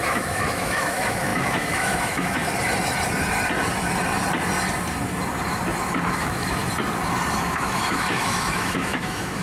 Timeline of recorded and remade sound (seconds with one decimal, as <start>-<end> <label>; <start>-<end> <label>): 0.0-2.4 remade; 2.4-6.1 recorded; 6.1-6.6 remade; 6.6-7.3 recorded; 7.3-9.4 remade